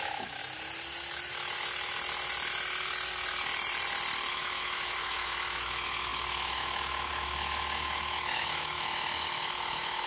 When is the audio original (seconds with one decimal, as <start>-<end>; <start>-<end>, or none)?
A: 0.4-4.3